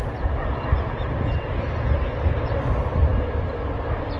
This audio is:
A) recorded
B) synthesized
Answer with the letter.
A